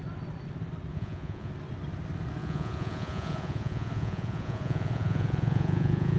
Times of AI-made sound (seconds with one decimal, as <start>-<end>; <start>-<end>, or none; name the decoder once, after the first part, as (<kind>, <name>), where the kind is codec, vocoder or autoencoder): 0.9-1.5 (vocoder, Vocos); 2.4-6.2